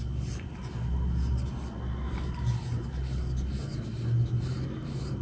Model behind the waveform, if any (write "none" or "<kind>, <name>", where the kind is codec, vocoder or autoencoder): none